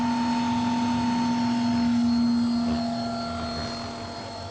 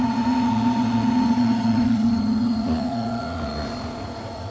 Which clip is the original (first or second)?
first